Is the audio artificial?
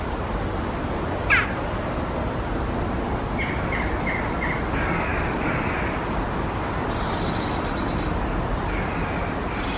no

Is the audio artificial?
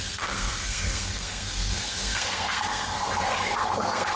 yes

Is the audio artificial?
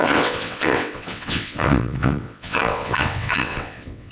yes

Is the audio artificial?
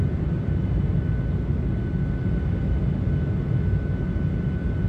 no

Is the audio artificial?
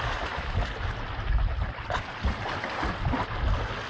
no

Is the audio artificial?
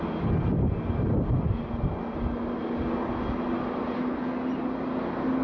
no